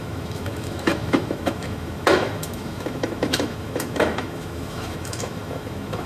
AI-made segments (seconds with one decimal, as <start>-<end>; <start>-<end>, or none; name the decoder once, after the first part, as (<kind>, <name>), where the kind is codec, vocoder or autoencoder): 0.0-6.1 (autoencoder, DAC-VAE)